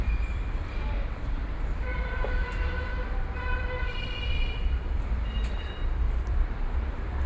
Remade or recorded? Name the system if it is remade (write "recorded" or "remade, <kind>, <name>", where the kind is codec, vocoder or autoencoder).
remade, vocoder, BigVGAN v2